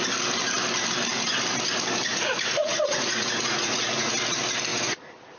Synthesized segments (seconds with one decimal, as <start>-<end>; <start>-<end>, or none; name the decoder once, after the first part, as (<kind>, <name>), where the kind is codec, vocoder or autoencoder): 2.1-4.1 (vocoder, Vocos); 4.7-5.4